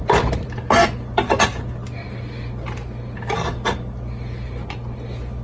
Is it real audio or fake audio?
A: real